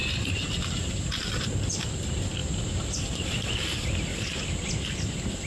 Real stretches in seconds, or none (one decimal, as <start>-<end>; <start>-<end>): 1.0-2.4; 3.4-4.1; 4.8-5.5